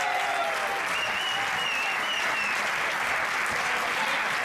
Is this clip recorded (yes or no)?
yes